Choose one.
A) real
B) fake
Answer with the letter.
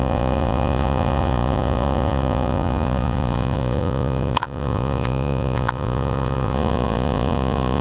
B